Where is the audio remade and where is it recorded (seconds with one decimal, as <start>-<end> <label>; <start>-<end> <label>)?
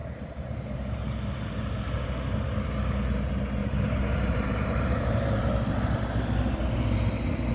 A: 0.0-1.7 remade; 1.7-3.6 recorded; 3.6-5.4 remade; 5.4-7.5 recorded